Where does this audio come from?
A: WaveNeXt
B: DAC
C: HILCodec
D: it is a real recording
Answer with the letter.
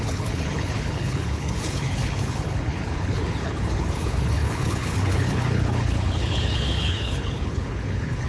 C